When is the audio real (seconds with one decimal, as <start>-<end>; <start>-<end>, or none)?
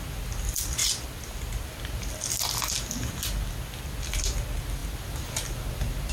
0.0-6.1